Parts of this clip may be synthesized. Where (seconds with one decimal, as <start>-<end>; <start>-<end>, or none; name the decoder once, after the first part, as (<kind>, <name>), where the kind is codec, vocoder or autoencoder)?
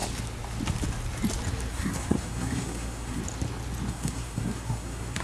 1.7-3.2 (codec, SNAC); 3.9-5.2